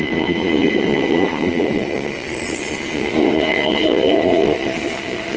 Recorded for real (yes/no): no